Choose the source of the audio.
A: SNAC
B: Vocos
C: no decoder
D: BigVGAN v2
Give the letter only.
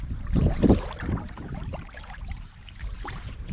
D